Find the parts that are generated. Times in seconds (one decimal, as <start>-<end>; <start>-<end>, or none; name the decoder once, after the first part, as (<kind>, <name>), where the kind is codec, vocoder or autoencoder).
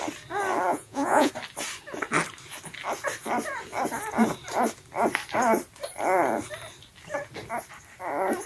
0.7-1.3 (vocoder, Vocos)